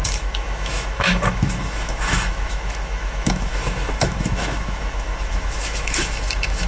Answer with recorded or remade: remade